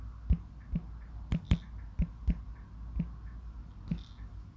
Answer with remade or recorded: recorded